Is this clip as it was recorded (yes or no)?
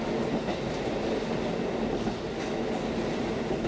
yes